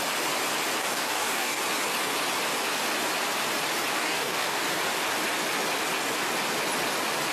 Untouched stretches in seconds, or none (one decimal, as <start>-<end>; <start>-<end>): 0.0-0.8; 1.6-3.9; 4.6-7.3